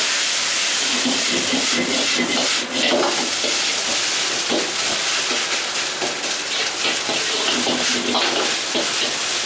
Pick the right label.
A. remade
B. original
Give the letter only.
B